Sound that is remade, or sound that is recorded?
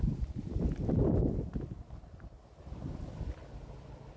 recorded